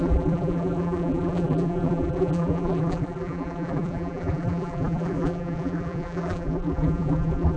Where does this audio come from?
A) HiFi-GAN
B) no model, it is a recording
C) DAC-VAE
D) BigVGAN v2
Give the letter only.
D